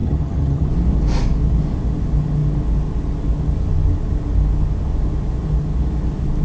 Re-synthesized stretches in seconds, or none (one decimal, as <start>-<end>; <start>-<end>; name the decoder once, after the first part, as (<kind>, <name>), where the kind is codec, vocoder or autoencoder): 0.0-0.7 (vocoder, HiFi-GAN)